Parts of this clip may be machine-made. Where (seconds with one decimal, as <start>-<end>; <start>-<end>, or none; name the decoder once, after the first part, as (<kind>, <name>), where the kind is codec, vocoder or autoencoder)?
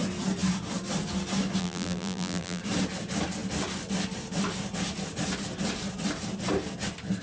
1.6-2.6 (vocoder, BigVGAN v2)